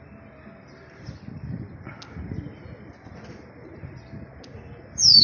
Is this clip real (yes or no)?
yes